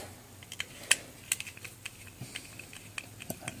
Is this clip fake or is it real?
real